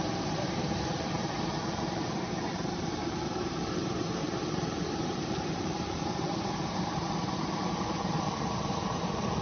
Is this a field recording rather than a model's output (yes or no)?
no